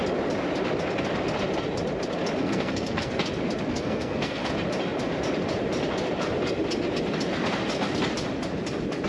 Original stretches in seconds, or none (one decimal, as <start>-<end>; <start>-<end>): 0.0-2.4; 3.3-3.7; 4.5-9.1